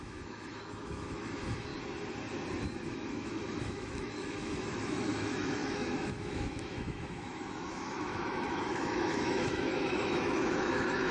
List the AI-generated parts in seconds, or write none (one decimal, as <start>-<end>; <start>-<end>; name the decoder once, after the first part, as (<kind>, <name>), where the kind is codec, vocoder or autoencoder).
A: 0.0-1.7 (autoencoder, DAC-VAE); 2.8-11.1